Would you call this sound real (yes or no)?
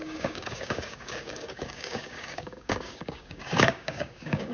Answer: no